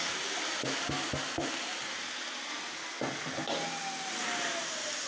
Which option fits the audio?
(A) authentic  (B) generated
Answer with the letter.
A